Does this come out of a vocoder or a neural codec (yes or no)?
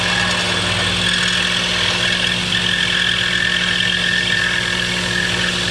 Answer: no